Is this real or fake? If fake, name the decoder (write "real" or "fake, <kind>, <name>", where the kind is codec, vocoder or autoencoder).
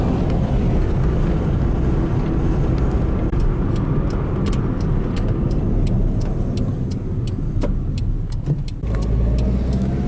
real